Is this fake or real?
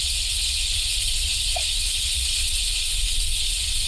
fake